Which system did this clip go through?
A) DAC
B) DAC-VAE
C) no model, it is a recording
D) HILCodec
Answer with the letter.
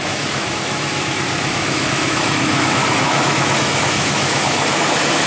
B